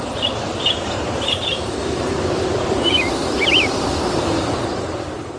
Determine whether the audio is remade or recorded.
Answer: remade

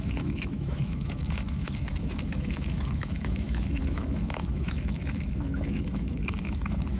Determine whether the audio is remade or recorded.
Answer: remade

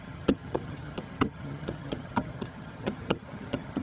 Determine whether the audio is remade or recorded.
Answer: remade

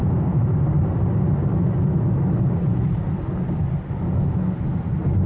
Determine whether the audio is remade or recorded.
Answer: recorded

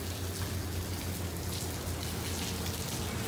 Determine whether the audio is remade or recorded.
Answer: recorded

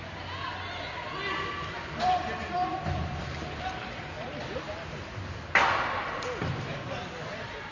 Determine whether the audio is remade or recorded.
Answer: recorded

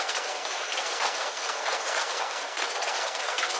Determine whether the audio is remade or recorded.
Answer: remade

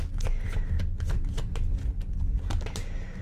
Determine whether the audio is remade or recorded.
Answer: recorded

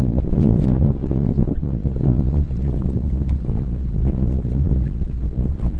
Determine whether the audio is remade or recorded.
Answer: remade